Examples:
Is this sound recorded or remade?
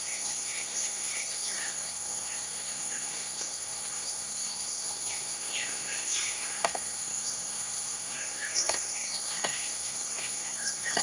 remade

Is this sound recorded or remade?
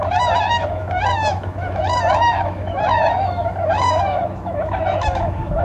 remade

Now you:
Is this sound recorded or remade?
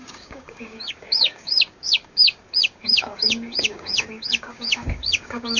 remade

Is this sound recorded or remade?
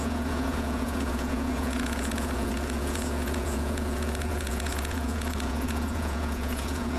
remade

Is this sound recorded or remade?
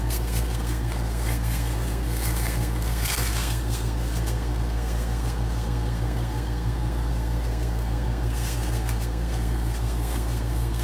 remade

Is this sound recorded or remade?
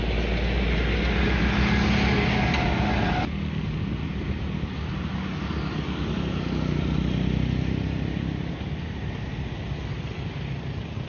recorded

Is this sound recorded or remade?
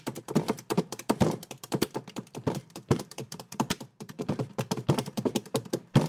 remade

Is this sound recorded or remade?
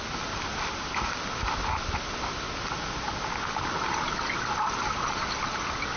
recorded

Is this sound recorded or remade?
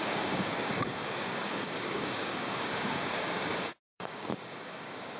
remade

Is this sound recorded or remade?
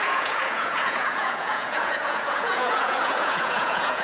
remade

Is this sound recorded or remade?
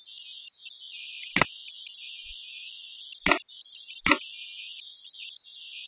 recorded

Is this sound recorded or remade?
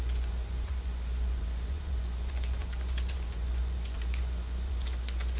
remade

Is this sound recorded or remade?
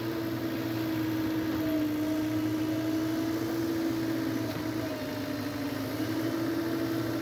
recorded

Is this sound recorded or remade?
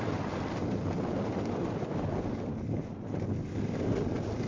recorded